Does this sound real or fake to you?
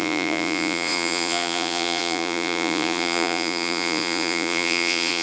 fake